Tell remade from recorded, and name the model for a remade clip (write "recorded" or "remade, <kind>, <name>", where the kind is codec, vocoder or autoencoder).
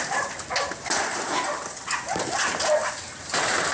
recorded